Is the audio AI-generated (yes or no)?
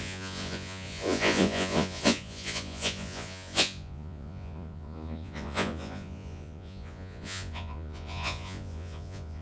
yes